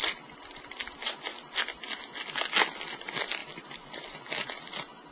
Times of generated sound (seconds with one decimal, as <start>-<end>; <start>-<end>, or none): none